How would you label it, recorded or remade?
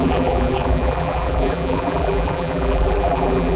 remade